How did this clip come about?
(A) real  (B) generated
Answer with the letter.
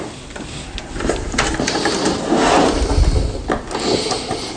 A